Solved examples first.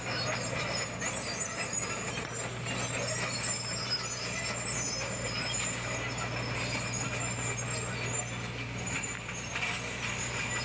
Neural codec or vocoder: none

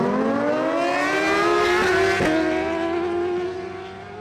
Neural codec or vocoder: none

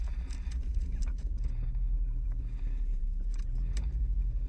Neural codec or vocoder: vocoder, BigVGAN v2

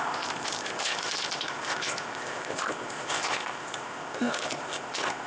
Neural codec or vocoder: codec, ZipCodec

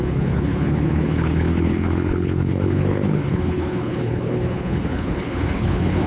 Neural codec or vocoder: codec, HILCodec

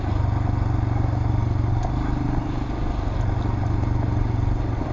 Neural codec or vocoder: none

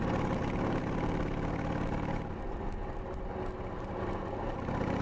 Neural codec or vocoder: none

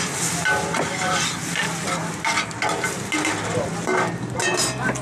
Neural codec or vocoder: none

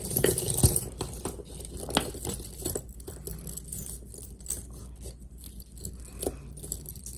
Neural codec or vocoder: none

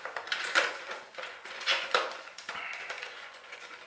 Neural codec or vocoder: vocoder, Vocos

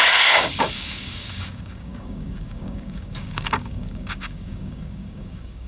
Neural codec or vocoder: codec, DAC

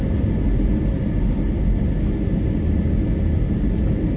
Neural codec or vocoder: none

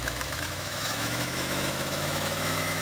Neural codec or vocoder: autoencoder, DAC-VAE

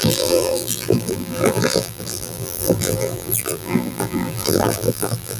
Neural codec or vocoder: vocoder, BigVGAN v2